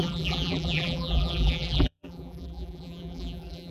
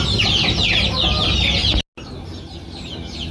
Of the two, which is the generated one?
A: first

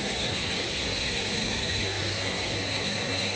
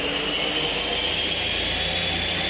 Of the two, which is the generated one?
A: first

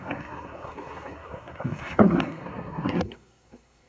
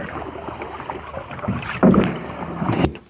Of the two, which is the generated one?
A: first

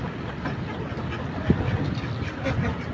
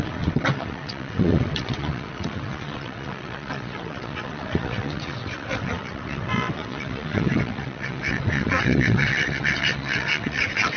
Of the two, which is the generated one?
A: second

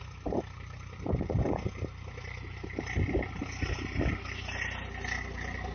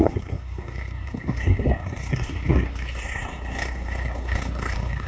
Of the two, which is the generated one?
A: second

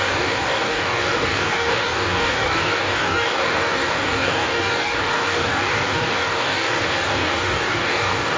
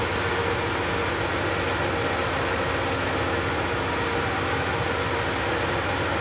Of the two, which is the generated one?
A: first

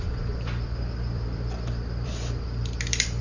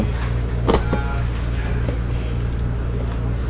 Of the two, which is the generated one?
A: first